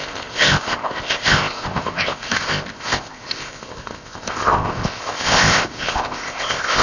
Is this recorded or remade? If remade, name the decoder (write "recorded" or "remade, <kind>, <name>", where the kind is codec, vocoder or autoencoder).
remade, codec, ZipCodec